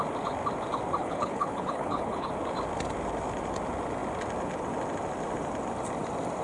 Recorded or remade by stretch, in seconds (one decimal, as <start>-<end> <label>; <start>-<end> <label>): 0.0-1.0 recorded; 1.0-2.3 remade; 2.3-6.4 recorded